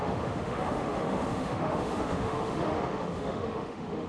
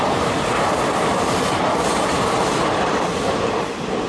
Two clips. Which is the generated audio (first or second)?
first